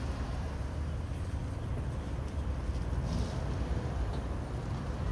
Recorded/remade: recorded